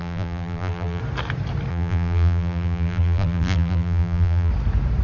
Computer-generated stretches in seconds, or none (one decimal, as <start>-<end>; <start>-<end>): 0.0-1.0; 1.7-4.5